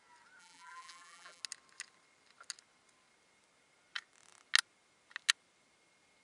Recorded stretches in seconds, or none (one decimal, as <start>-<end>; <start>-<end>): 0.0-0.4; 1.4-6.2